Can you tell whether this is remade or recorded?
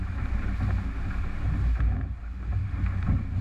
recorded